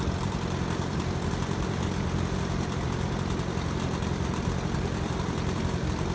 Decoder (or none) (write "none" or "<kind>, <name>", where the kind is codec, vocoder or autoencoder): vocoder, BigVGAN v2